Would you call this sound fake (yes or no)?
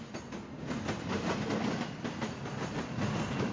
no